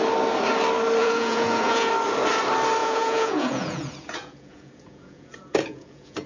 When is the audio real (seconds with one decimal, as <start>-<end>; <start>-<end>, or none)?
0.0-1.0; 1.9-2.8